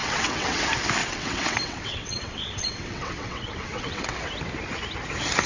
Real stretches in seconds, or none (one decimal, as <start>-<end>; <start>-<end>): 0.6-1.0; 4.3-5.5